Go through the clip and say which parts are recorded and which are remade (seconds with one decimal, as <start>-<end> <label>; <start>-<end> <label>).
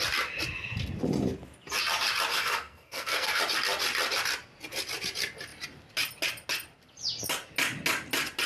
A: 0.0-2.3 recorded; 2.3-3.4 remade; 3.4-8.5 recorded